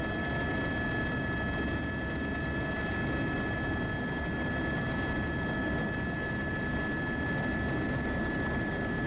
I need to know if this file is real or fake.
real